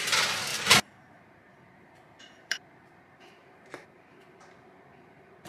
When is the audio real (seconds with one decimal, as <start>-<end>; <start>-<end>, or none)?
none